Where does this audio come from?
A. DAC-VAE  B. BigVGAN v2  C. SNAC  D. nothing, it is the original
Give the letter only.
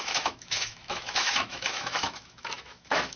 A